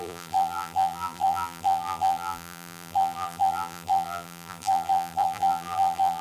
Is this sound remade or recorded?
remade